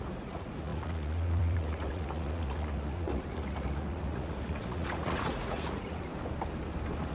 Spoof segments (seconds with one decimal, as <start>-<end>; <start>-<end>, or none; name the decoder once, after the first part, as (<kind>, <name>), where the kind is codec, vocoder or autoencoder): 0.0-6.1 (vocoder, Vocos)